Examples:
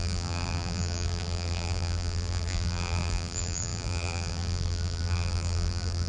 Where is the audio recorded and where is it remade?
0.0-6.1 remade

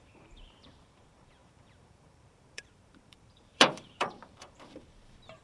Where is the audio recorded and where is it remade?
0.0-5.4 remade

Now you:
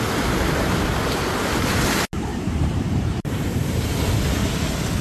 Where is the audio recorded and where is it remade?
0.0-2.3 recorded; 2.3-3.8 remade; 3.8-5.0 recorded